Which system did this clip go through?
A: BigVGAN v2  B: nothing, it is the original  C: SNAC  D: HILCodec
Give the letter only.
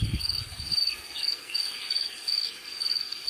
C